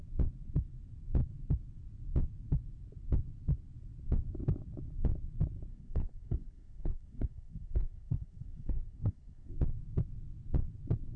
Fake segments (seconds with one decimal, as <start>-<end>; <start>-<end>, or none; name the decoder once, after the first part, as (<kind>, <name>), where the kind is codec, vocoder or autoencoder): 5.7-9.5 (codec, SNAC)